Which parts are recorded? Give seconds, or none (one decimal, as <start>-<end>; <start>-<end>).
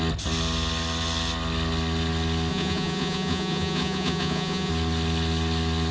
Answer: 0.0-2.5; 4.7-5.9